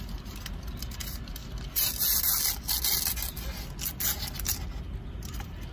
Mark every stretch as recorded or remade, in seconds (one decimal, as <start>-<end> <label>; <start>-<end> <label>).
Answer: 0.0-5.7 recorded